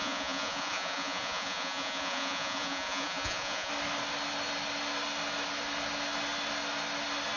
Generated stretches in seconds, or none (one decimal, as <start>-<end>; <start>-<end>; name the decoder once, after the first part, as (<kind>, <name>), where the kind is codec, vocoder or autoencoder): 0.0-3.7 (vocoder, Vocos)